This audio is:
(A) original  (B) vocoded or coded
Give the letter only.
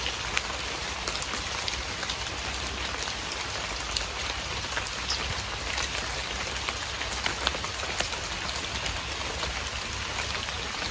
A